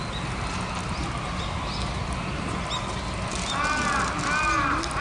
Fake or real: real